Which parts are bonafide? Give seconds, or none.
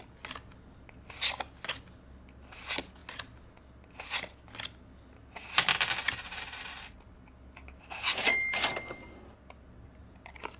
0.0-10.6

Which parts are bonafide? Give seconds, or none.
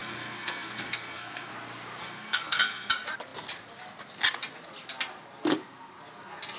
1.5-2.0; 2.9-6.6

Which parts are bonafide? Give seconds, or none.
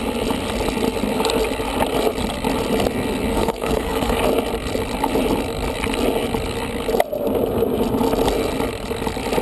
0.0-3.3; 4.2-9.4